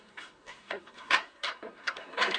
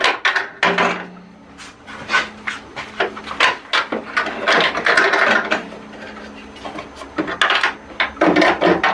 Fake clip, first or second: first